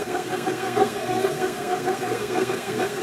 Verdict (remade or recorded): remade